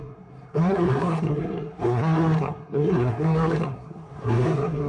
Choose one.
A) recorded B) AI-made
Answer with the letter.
B